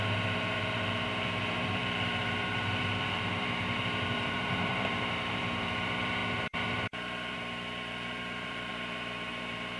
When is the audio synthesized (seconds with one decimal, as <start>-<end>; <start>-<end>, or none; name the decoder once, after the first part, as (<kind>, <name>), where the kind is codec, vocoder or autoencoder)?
0.0-9.8 (vocoder, BigVGAN v2)